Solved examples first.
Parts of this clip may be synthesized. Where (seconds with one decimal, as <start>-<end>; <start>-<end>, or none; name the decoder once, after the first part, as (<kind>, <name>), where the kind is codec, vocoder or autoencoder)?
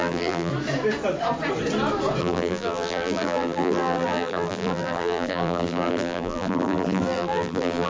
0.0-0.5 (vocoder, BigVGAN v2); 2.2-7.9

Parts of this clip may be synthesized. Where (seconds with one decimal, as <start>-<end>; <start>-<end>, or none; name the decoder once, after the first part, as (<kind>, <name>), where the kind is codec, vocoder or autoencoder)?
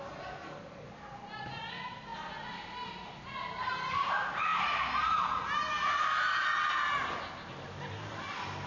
none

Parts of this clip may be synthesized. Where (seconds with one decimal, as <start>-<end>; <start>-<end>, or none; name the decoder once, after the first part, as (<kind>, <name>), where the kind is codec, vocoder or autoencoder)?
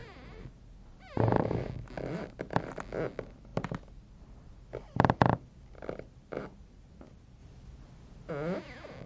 none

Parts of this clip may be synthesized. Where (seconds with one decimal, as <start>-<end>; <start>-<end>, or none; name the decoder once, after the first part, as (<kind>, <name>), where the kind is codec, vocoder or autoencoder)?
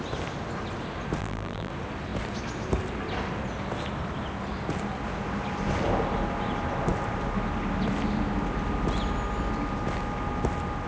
1.2-1.7 (vocoder, BigVGAN v2)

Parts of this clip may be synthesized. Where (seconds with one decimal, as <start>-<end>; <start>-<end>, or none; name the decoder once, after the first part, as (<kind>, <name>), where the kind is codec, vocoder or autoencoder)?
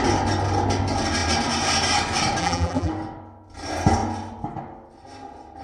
2.4-2.9 (vocoder, BigVGAN v2)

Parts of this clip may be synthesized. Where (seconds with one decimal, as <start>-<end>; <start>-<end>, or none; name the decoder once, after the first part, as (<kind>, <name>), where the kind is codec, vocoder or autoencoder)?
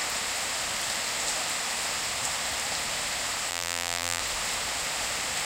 3.5-4.2 (vocoder, BigVGAN v2)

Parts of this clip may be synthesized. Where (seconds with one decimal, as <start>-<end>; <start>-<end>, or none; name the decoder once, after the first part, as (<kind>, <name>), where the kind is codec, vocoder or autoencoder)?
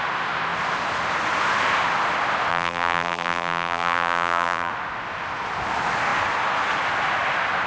2.5-4.7 (vocoder, BigVGAN v2)